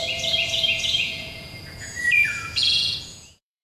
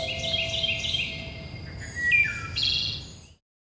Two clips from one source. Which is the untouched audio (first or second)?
second